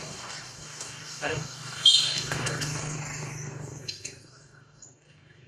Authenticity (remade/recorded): remade